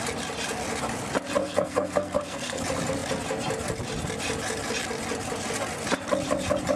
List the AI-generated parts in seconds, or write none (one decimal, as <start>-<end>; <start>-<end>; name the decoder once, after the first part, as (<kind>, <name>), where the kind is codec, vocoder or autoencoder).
1.4-2.6 (codec, SNAC)